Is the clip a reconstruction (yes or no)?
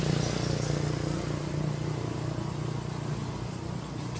no